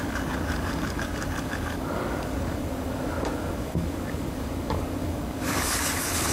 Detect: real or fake fake